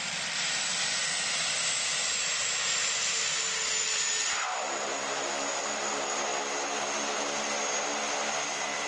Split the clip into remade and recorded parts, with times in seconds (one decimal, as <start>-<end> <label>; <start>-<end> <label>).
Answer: 0.0-8.9 recorded